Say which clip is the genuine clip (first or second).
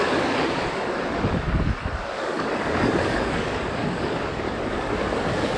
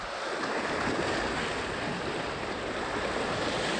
second